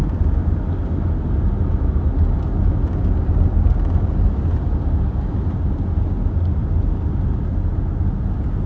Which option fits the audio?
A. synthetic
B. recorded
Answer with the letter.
B